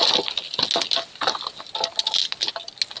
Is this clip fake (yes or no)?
no